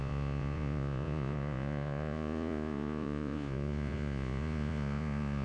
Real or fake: fake